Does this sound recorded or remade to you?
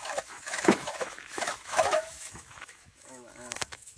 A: remade